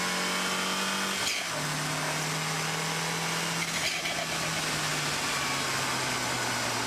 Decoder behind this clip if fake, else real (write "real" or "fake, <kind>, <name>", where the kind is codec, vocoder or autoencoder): real